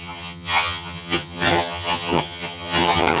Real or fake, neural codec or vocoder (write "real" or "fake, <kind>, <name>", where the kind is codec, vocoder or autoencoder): fake, vocoder, HiFi-GAN